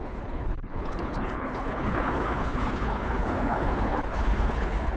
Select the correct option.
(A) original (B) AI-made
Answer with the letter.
B